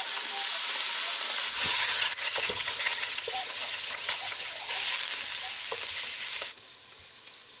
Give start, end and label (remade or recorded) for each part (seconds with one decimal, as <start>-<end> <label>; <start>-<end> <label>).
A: 0.0-1.6 recorded; 1.6-4.7 remade; 4.7-7.6 recorded